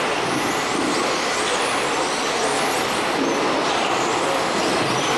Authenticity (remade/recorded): recorded